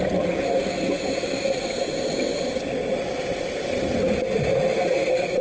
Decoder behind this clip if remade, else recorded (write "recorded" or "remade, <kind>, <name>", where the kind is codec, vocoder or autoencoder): recorded